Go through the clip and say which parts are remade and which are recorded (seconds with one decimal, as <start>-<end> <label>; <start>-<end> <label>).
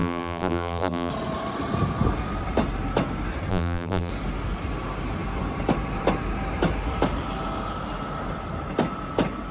0.0-1.1 remade; 1.1-3.5 recorded; 3.5-4.1 remade; 4.1-9.5 recorded